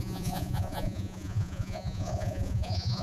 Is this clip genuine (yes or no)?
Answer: no